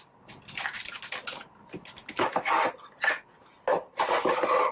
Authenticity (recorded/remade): recorded